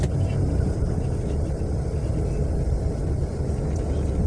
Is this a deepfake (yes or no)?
no